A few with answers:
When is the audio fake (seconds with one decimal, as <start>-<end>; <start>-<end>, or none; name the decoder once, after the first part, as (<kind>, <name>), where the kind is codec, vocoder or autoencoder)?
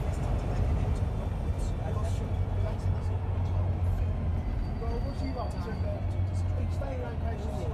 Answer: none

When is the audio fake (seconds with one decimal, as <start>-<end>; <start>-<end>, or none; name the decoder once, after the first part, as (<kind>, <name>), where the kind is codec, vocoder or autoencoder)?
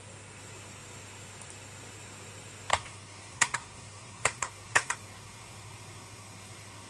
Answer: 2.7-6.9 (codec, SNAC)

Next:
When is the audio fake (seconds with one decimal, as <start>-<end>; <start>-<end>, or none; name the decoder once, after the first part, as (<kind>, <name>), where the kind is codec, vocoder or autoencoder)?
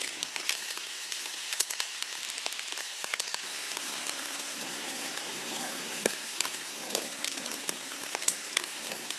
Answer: 0.0-2.2 (codec, SNAC); 2.8-9.2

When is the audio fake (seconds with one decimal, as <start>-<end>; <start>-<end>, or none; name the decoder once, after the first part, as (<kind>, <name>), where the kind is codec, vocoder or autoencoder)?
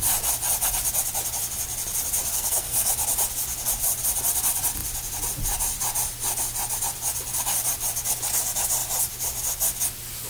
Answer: 2.2-2.9 (codec, SNAC)